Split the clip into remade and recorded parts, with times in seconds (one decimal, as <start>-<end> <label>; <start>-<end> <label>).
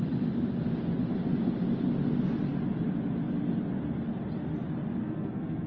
0.0-5.0 recorded; 5.0-5.7 remade